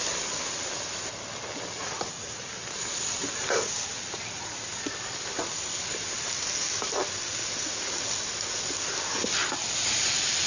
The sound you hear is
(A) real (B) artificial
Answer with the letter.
A